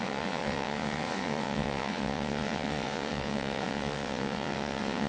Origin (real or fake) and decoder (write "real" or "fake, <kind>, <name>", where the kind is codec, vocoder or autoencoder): fake, vocoder, WaveNeXt